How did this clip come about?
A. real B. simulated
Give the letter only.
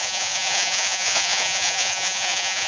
B